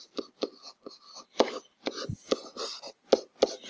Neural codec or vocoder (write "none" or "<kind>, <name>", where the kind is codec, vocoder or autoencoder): none